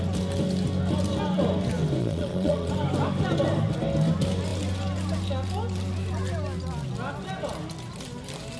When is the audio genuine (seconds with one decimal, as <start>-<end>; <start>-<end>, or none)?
0.0-2.0; 2.7-8.6